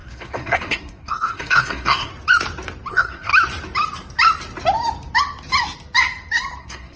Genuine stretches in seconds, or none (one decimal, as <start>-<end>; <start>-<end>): 2.1-2.9; 3.3-6.6